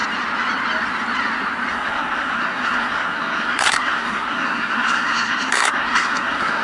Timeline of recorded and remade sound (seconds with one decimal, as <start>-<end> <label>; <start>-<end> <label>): 0.0-1.7 recorded; 1.7-6.6 remade